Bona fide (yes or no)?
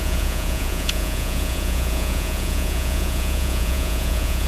no